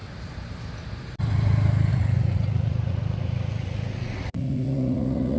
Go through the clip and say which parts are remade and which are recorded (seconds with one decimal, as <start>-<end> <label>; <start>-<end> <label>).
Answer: 0.0-1.9 recorded; 1.9-5.4 remade